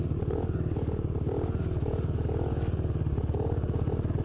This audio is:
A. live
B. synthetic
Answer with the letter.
A